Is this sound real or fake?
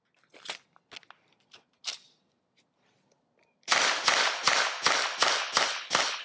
real